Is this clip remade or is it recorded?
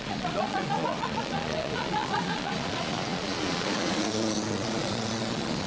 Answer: remade